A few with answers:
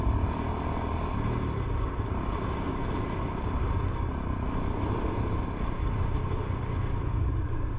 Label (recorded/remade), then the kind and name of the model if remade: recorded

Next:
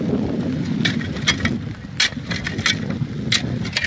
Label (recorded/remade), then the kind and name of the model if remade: recorded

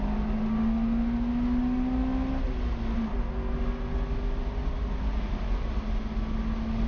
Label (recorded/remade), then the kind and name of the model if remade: recorded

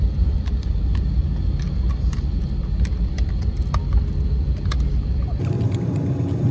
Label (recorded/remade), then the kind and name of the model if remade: recorded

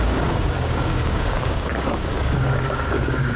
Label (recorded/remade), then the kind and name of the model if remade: remade, codec, DAC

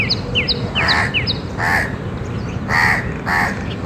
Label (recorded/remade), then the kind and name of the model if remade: recorded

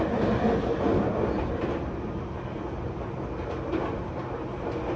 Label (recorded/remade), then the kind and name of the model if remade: recorded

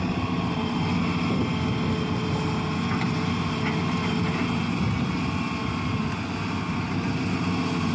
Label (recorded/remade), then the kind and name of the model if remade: recorded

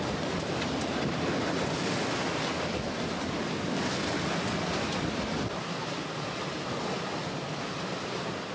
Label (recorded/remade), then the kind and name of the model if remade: recorded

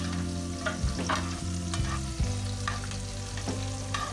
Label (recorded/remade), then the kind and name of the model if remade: recorded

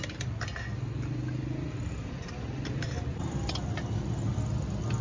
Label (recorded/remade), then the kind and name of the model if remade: recorded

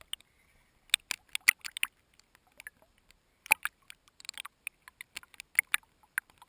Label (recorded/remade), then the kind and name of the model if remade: recorded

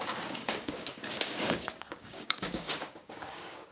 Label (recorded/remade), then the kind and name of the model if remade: remade, codec, DAC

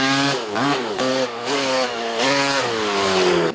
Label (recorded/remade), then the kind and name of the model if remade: remade, codec, DAC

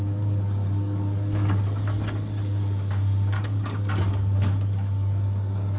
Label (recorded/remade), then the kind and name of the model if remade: remade, codec, DAC